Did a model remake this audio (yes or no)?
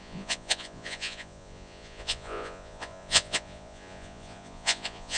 yes